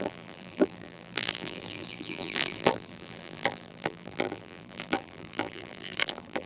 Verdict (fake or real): fake